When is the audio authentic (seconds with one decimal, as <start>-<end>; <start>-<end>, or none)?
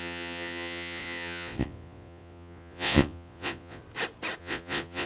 3.8-4.4